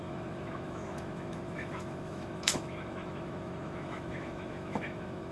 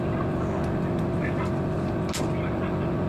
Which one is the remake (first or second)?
first